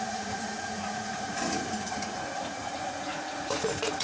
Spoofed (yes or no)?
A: yes